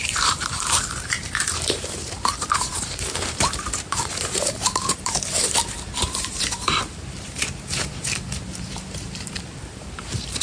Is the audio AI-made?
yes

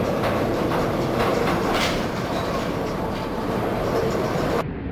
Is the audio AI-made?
yes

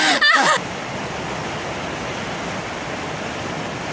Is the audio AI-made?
no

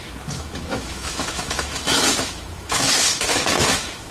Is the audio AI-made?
yes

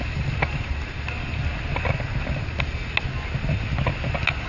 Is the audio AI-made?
no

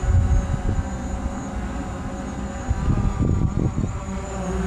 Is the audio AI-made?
no